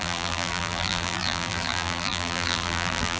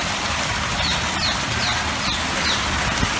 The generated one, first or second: first